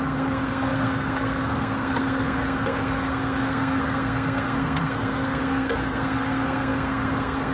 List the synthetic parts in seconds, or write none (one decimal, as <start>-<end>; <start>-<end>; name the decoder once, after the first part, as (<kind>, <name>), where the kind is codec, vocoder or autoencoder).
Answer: 0.0-7.5 (codec, SNAC)